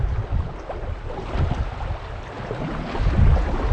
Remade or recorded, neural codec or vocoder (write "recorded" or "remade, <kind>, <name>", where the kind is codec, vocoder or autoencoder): recorded